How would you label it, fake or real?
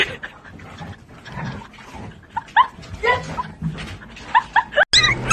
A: real